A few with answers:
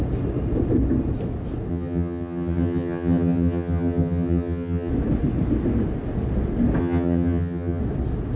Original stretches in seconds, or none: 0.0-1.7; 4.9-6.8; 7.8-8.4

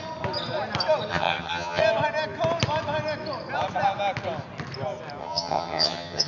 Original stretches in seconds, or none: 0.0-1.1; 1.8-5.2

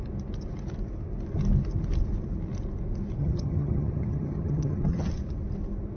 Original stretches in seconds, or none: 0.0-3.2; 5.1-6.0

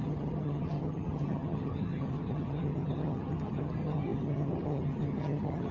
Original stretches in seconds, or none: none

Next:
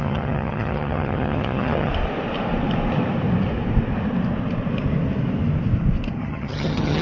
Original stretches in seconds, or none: 1.9-6.1

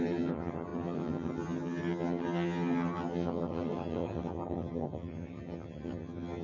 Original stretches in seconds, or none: none